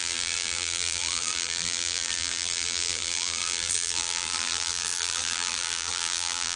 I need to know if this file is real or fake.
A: fake